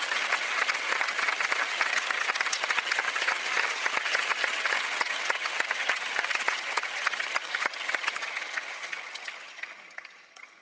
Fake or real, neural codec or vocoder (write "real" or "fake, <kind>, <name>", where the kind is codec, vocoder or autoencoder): fake, vocoder, HiFi-GAN